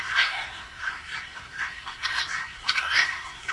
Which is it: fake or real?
fake